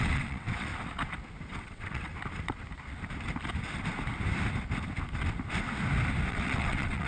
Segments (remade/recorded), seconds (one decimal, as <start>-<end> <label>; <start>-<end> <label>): 0.0-0.7 remade; 0.7-1.5 recorded; 1.5-2.1 remade; 2.1-6.3 recorded; 6.3-7.1 remade